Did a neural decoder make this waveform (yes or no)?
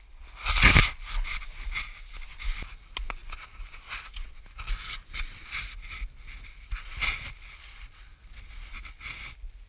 no